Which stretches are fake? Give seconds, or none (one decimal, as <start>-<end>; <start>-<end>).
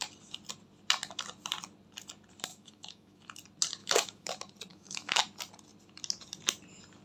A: 2.5-3.2; 3.8-4.3; 4.7-5.2